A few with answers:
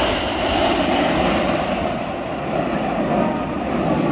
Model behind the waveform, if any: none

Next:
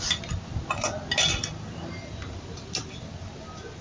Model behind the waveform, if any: none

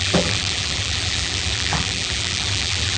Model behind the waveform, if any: vocoder, BigVGAN v2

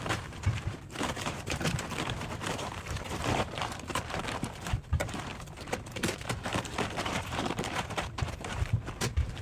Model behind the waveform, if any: vocoder, BigVGAN v2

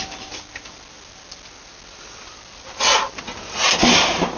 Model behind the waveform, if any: none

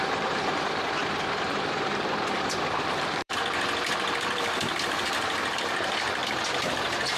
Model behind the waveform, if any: vocoder, BigVGAN v2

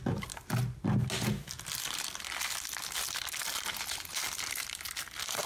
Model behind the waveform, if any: none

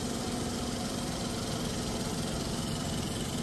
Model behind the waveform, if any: vocoder, BigVGAN v2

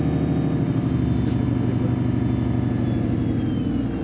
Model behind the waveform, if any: none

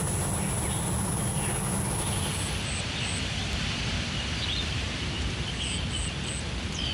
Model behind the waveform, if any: none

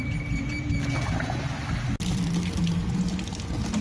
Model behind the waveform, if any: none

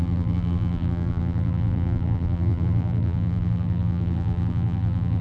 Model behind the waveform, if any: vocoder, BigVGAN v2